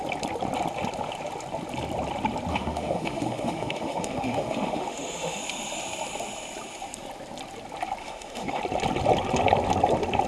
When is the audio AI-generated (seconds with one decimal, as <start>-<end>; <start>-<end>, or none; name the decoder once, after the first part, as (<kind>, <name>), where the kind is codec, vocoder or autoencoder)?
2.5-5.4 (autoencoder, DAC-VAE); 8.0-8.6